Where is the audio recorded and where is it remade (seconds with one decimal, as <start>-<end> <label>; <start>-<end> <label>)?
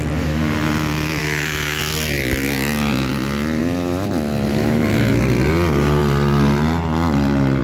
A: 0.0-1.2 recorded; 1.2-1.8 remade; 1.8-4.5 recorded; 4.5-5.2 remade; 5.2-7.6 recorded